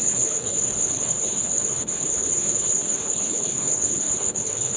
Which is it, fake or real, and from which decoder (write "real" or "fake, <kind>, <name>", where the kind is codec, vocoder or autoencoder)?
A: fake, codec, HILCodec